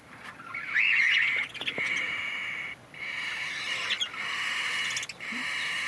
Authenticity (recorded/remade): recorded